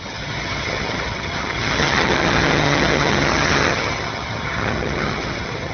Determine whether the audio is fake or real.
fake